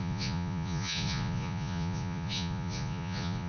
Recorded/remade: remade